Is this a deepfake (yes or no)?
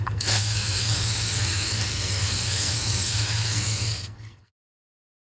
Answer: yes